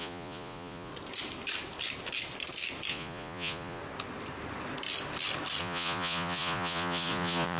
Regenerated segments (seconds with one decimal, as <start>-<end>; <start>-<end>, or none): 0.0-0.9; 2.9-3.8; 5.6-7.6